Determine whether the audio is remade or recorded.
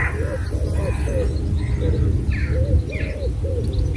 recorded